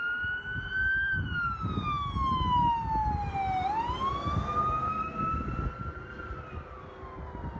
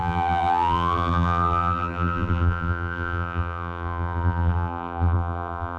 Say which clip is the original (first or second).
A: first